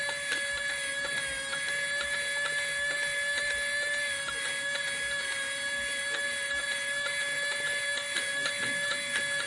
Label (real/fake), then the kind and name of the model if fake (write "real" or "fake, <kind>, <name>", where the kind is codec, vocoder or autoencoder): real